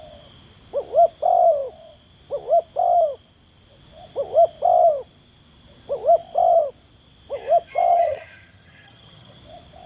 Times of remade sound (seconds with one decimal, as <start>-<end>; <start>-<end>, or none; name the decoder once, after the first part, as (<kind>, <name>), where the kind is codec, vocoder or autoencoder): 7.9-9.4 (vocoder, HiFi-GAN)